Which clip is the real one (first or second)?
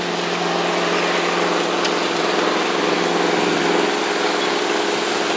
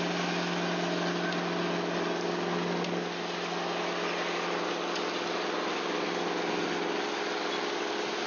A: second